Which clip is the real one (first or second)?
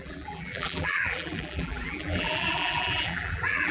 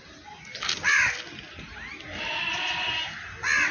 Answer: second